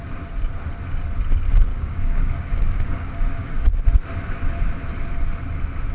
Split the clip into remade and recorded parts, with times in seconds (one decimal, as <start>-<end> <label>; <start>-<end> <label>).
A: 0.0-1.7 recorded; 1.7-3.7 remade; 3.7-5.9 recorded